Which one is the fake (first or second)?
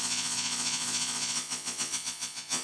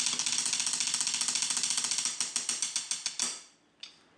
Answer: first